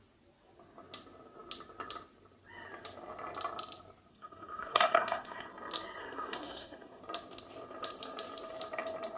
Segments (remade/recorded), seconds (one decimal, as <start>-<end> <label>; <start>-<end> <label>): 0.0-4.1 recorded; 4.1-5.5 remade; 5.5-6.0 recorded; 6.0-7.0 remade; 7.0-9.2 recorded